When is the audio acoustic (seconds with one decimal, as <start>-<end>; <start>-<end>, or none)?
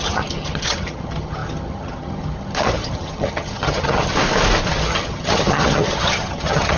4.1-4.7